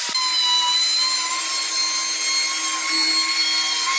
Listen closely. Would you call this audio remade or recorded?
recorded